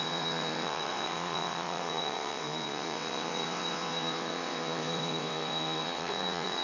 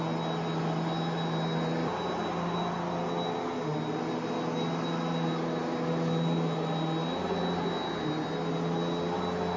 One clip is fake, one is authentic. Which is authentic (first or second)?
second